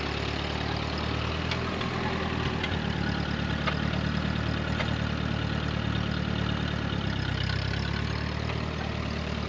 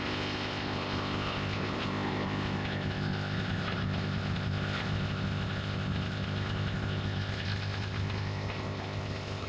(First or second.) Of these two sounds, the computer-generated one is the second